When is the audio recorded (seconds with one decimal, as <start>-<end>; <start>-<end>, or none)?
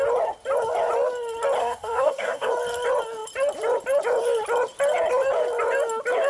0.0-1.6; 2.5-6.3